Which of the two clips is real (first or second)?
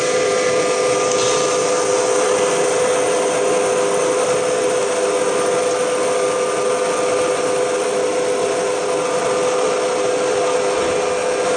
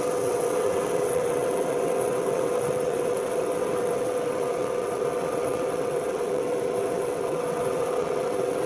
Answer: first